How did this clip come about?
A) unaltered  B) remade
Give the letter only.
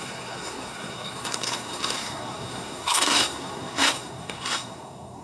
B